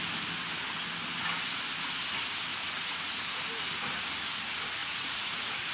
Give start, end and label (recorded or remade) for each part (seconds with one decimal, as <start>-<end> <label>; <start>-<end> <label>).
0.0-2.5 recorded; 2.5-3.1 remade; 3.1-4.8 recorded; 4.8-5.7 remade